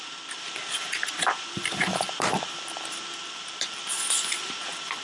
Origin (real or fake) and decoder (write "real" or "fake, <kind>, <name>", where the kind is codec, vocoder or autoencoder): fake, vocoder, BigVGAN v2